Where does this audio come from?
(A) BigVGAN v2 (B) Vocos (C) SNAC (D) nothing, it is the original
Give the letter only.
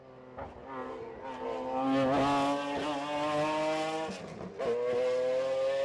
D